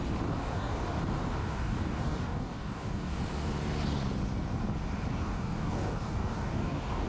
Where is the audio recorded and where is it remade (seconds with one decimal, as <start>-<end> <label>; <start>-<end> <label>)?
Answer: 0.0-0.4 recorded; 0.4-1.0 remade; 1.0-1.4 recorded; 1.4-3.2 remade; 3.2-5.2 recorded; 5.2-7.1 remade